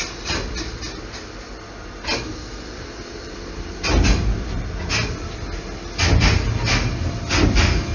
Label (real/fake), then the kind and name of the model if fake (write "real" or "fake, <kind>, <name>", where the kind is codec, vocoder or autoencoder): real